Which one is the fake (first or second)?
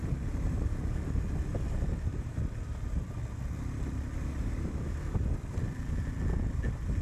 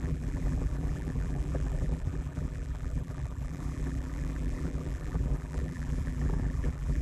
second